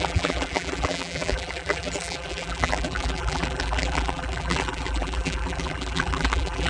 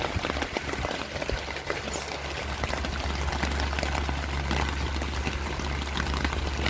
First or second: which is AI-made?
first